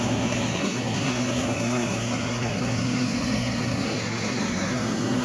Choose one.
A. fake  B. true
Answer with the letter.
A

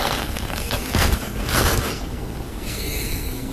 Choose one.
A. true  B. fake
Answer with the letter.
B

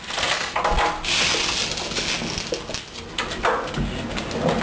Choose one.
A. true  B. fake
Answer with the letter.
A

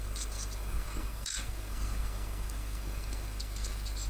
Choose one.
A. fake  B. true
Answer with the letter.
A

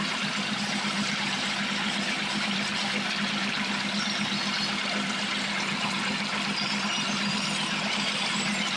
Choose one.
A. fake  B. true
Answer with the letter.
B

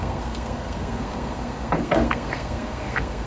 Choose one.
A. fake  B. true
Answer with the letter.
A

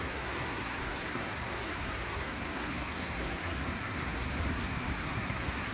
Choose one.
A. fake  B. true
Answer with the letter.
A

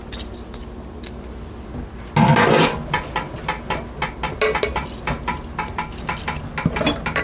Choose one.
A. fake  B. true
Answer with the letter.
B